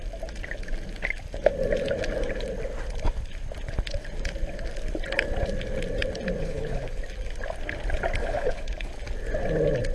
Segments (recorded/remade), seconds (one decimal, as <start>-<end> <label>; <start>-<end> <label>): 0.0-6.4 recorded; 6.4-7.0 remade; 7.0-8.2 recorded; 8.2-8.9 remade; 8.9-9.9 recorded

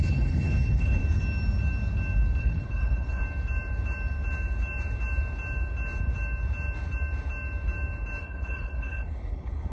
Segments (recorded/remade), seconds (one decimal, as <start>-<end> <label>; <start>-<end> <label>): 0.0-1.0 remade; 1.0-2.4 recorded; 2.4-3.2 remade; 3.2-8.2 recorded; 8.2-9.7 remade

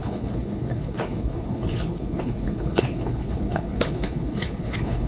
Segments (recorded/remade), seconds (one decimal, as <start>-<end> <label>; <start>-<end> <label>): 0.0-5.1 remade

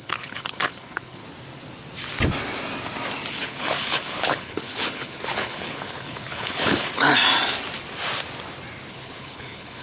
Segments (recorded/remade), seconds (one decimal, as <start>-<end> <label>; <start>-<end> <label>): 0.0-1.2 remade; 1.2-3.3 recorded; 3.3-7.1 remade; 7.1-8.9 recorded; 8.9-9.8 remade

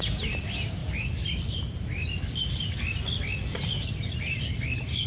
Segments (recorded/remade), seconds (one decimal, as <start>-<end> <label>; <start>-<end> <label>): 0.0-5.1 recorded

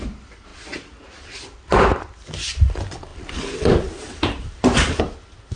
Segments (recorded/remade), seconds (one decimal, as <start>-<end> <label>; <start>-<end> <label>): 0.0-5.6 recorded

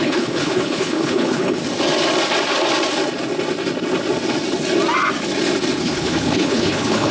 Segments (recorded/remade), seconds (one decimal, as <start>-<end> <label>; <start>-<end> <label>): 0.0-1.6 remade; 1.6-5.8 recorded; 5.8-7.1 remade